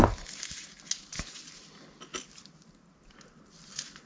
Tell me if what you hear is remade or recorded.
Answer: recorded